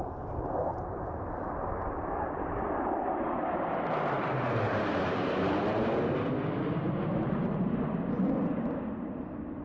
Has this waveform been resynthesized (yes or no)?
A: no